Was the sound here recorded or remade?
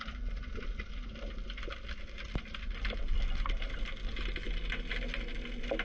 recorded